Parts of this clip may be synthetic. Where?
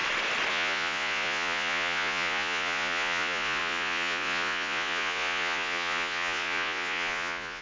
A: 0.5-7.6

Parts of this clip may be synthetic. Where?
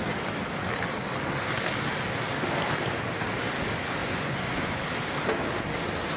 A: 4.0-4.8